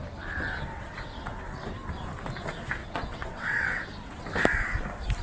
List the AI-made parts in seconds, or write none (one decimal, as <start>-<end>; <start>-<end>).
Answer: 0.7-1.4; 2.8-4.2